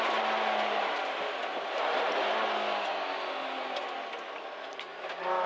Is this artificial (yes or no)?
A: no